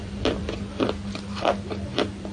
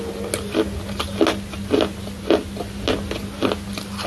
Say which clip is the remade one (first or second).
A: first